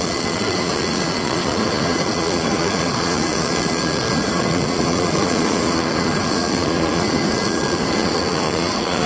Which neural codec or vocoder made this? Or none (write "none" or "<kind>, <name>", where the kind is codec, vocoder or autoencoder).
vocoder, Vocos